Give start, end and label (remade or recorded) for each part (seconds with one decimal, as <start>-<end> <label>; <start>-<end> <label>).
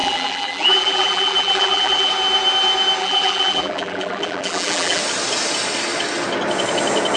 0.0-2.1 remade; 2.1-3.0 recorded; 3.0-5.0 remade; 5.0-7.2 recorded